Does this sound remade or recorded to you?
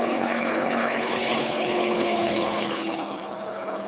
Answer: remade